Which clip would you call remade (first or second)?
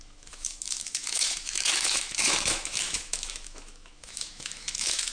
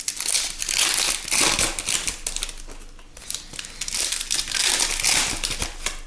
first